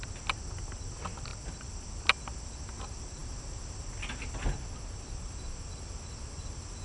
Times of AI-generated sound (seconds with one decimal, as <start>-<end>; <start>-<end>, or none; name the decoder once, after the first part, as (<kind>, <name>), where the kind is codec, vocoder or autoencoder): none